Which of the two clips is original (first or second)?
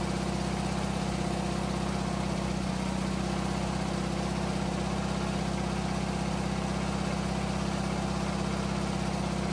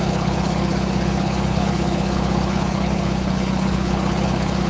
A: first